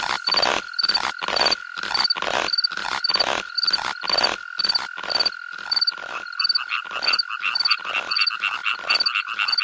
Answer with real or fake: real